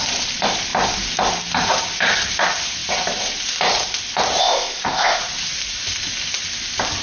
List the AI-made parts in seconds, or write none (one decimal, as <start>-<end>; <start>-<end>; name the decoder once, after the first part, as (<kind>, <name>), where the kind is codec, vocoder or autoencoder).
4.4-5.2 (codec, ZipCodec)